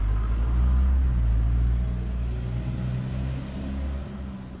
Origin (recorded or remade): recorded